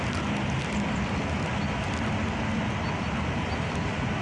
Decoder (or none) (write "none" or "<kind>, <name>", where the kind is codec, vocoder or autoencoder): none